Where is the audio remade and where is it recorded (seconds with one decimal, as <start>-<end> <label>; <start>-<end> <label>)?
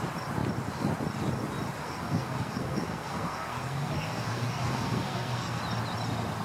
0.0-1.8 recorded; 1.8-5.6 remade; 5.6-6.4 recorded